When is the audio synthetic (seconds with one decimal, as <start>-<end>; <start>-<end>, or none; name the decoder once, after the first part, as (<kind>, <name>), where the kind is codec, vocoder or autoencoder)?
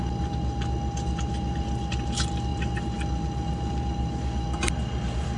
none